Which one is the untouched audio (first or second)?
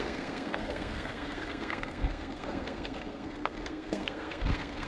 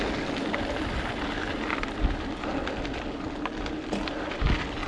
second